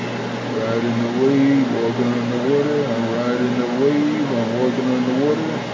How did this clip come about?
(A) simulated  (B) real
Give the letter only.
B